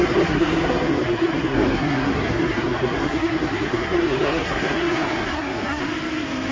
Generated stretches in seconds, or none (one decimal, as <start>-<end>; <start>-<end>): 0.0-5.8